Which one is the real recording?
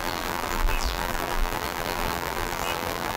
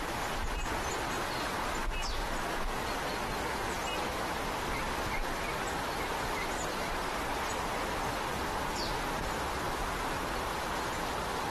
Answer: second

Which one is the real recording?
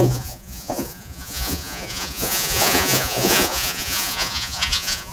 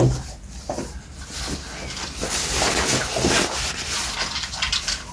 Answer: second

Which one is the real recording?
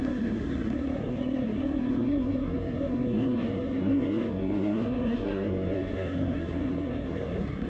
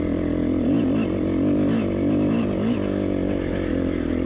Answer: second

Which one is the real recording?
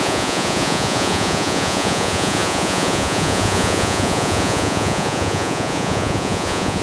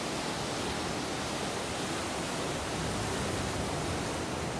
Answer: second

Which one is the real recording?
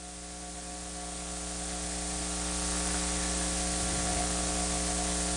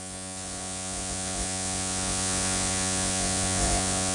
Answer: first